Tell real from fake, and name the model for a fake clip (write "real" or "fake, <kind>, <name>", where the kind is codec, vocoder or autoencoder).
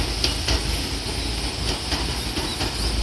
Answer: real